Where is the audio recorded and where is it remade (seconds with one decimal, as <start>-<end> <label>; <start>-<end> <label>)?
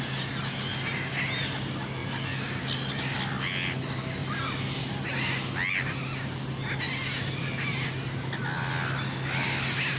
0.0-10.0 recorded